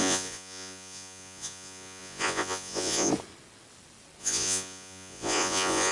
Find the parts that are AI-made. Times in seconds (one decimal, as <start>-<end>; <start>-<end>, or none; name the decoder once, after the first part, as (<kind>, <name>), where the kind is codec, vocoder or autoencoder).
0.0-3.1 (vocoder, Vocos); 4.2-5.9